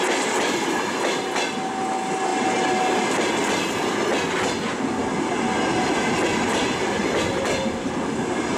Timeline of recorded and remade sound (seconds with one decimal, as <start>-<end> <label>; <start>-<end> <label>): 0.0-8.6 recorded